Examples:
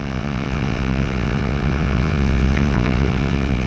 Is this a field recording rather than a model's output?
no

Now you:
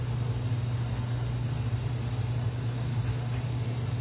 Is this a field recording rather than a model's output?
yes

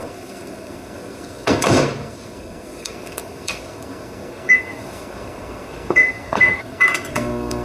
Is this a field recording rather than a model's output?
no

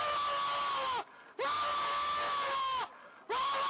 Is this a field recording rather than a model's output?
yes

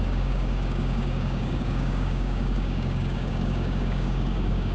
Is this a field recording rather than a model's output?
no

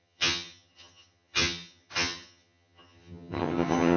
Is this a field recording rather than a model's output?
no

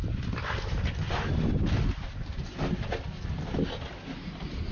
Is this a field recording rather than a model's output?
yes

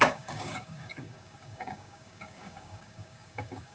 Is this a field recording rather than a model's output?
no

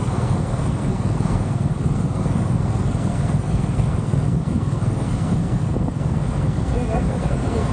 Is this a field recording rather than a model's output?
no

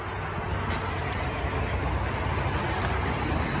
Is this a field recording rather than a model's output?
yes